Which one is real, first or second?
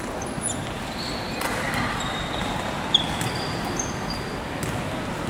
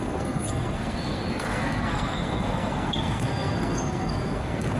first